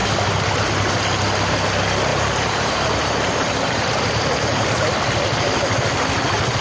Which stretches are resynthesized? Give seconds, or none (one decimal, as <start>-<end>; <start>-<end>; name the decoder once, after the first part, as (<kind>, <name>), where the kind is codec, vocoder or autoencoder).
2.1-4.9 (vocoder, BigVGAN v2)